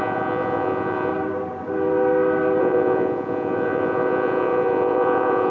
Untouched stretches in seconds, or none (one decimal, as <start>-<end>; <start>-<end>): 1.1-2.6